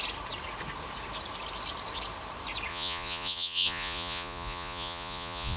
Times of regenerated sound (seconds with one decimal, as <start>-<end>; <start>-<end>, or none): 2.7-5.6